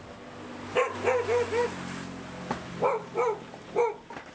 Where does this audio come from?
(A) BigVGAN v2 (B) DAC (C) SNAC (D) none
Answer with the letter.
D